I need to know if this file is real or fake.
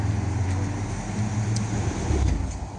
real